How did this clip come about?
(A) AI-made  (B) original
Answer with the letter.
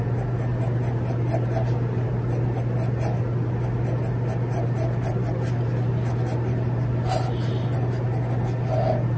B